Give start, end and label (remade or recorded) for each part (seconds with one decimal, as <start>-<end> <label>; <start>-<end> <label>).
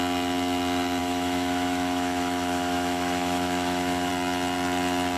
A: 0.0-1.0 recorded; 1.0-4.1 remade; 4.1-5.2 recorded